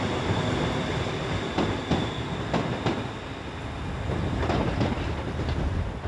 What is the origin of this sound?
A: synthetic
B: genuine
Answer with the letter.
B